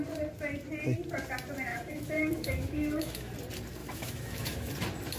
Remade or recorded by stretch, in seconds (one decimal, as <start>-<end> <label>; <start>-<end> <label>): 0.0-1.7 recorded; 1.7-3.3 remade; 3.3-3.8 recorded; 3.8-4.7 remade; 4.7-5.2 recorded